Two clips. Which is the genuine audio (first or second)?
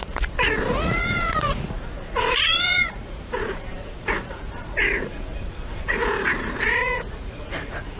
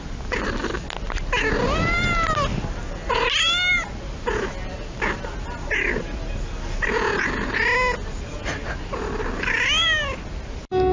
second